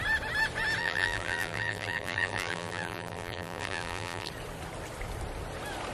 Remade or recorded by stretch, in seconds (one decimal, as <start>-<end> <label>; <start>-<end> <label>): 0.0-0.8 recorded; 0.8-4.3 remade; 4.3-5.9 recorded